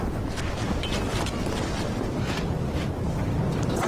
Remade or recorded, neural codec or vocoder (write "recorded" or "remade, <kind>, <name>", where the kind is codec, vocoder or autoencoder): recorded